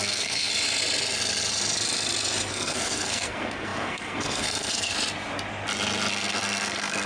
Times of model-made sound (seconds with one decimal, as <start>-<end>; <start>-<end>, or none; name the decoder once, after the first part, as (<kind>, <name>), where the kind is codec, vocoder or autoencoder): 0.0-0.5 (codec, SNAC); 2.5-4.9; 6.1-7.1